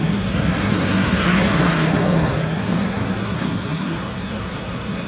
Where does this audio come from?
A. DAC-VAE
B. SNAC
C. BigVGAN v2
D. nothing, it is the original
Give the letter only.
B